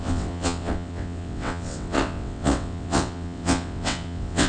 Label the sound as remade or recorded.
remade